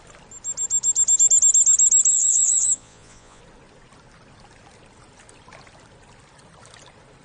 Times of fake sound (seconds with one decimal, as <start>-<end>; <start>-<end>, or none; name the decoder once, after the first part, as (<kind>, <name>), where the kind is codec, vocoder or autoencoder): 2.1-3.4 (vocoder, Vocos)